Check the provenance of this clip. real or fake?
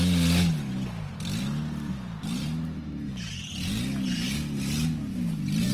real